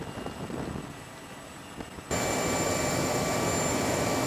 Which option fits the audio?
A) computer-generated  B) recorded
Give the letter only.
B